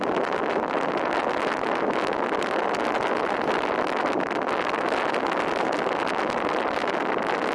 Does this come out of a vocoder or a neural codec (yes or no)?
no